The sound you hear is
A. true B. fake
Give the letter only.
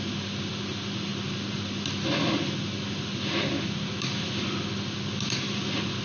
A